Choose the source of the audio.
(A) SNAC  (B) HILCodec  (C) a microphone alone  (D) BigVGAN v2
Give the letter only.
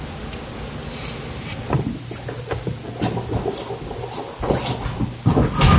C